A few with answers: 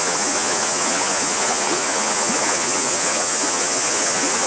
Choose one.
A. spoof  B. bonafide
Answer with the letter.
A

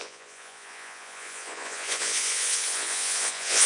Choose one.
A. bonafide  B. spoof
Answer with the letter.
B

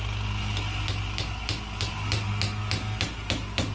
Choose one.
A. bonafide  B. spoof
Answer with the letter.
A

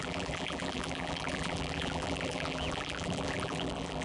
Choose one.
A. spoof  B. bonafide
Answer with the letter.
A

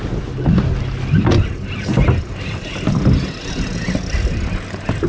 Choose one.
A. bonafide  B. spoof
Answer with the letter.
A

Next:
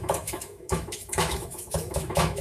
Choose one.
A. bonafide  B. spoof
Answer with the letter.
B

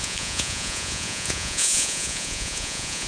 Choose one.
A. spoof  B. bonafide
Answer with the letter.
A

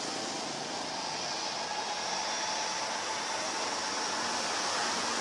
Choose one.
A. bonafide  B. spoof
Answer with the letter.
A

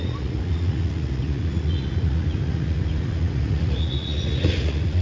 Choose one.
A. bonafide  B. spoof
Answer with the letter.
B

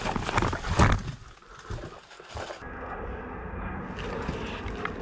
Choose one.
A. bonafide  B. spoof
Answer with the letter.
A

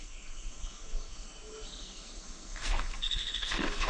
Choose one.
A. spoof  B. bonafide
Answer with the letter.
A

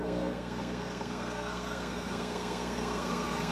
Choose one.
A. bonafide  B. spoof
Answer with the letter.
B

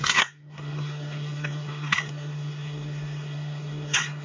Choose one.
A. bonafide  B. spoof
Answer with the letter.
B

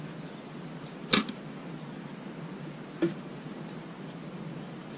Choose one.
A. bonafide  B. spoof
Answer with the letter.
A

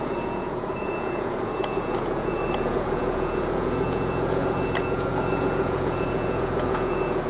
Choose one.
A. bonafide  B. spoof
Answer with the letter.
B